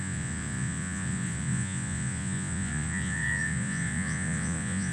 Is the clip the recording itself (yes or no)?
no